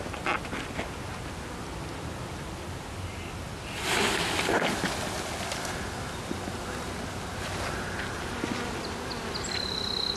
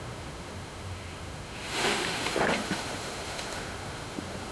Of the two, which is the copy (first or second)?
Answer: second